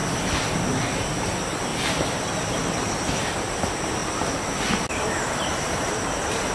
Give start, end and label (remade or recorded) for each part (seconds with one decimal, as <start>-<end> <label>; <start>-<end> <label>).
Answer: 0.0-1.7 recorded; 1.7-2.2 remade; 2.2-5.5 recorded; 5.5-6.5 remade